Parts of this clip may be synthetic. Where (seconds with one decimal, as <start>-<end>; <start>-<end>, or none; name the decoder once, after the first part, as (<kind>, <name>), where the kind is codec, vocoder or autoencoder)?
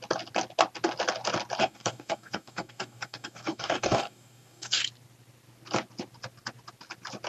1.6-4.8 (codec, DAC)